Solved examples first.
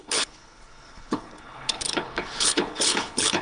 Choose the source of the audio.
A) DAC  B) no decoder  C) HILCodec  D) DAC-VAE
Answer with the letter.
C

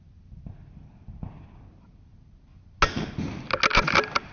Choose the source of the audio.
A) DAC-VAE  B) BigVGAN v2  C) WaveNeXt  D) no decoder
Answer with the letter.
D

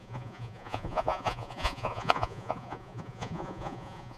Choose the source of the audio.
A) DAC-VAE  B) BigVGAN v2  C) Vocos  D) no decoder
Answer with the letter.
C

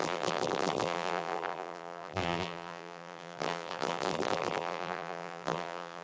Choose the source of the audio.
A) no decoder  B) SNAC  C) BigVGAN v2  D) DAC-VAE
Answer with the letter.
C